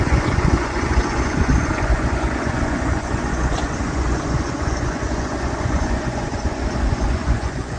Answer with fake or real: fake